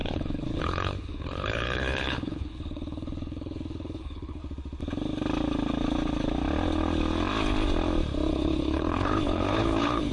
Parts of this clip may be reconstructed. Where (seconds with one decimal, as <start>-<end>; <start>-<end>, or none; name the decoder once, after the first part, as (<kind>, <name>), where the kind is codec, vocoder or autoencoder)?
0.0-4.4 (codec, HILCodec); 8.3-10.1